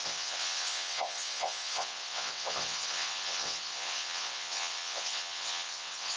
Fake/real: fake